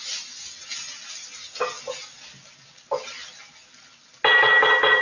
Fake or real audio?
real